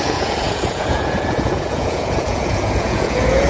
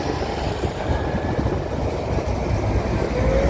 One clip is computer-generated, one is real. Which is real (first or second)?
second